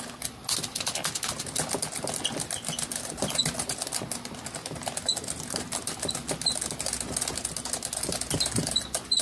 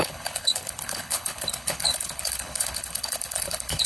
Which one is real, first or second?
first